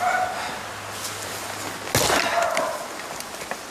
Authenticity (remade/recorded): recorded